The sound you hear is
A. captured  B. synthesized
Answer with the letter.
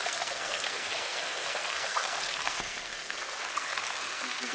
B